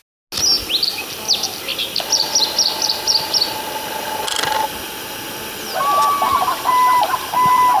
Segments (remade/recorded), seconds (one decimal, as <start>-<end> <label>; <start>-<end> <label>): 0.0-6.3 recorded; 6.3-7.3 remade; 7.3-7.8 recorded